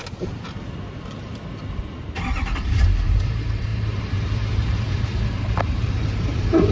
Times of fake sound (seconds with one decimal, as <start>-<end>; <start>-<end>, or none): 1.8-6.7